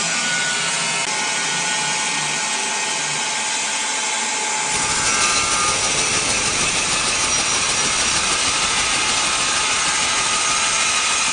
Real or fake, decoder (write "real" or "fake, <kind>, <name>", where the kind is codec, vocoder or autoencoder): real